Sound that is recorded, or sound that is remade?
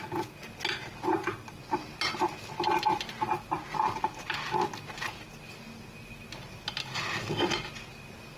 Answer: recorded